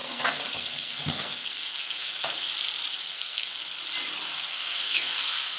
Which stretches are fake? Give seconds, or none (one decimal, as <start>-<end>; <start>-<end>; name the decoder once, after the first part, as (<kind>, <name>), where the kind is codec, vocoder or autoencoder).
0.0-2.5 (codec, SNAC); 2.9-3.5; 4.3-5.6